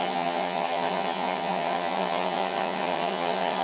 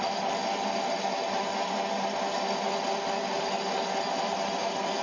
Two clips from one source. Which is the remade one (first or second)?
first